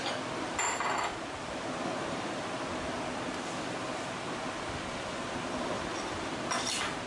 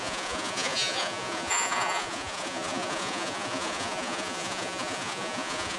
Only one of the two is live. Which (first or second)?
first